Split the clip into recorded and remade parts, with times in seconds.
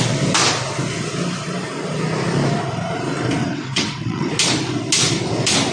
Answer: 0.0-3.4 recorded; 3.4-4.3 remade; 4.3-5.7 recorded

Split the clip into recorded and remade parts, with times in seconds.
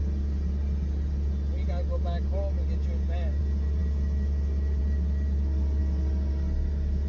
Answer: 0.0-7.1 recorded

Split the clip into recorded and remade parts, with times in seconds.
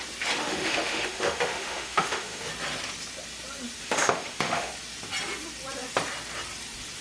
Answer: 0.0-0.4 recorded; 0.4-2.5 remade; 2.5-3.8 recorded; 3.8-4.7 remade; 4.7-7.0 recorded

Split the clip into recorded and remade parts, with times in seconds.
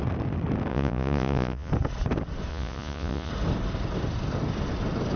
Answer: 0.0-0.7 recorded; 0.7-1.7 remade; 1.7-2.5 recorded; 2.5-3.3 remade; 3.3-5.2 recorded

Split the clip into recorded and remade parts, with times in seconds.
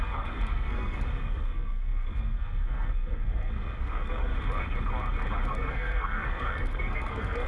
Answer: 0.0-4.3 remade; 4.3-5.5 recorded; 5.5-7.5 remade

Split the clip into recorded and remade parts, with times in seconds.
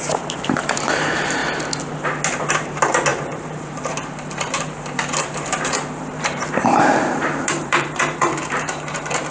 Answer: 0.0-1.4 remade; 1.4-2.5 recorded; 2.5-9.3 remade